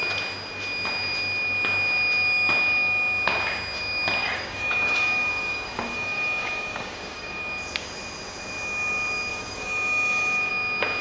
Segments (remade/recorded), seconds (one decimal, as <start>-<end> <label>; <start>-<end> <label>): 0.0-4.2 recorded; 4.2-7.4 remade; 7.4-9.3 recorded; 9.3-10.5 remade; 10.5-11.0 recorded